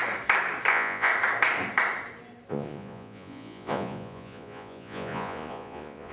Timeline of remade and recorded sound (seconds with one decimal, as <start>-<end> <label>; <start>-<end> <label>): 0.0-0.7 recorded; 0.7-1.1 remade; 1.1-2.5 recorded; 2.5-6.1 remade